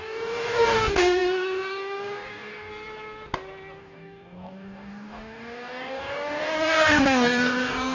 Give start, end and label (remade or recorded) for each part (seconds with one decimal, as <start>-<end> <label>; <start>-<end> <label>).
0.0-2.7 remade; 2.7-3.8 recorded; 3.8-7.9 remade